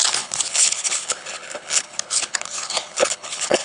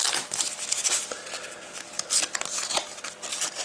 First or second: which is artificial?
first